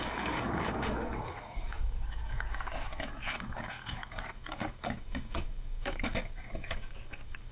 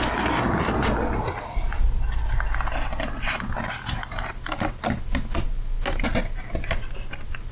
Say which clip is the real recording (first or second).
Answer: second